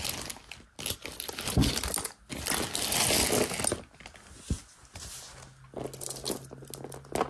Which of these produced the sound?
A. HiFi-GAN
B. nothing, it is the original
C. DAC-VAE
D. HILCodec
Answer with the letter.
B